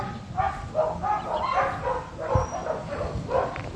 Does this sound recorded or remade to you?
recorded